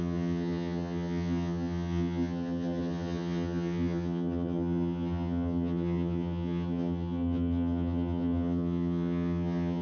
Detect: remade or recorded remade